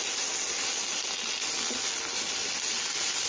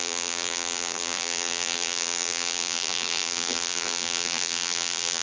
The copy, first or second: second